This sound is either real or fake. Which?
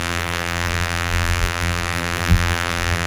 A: fake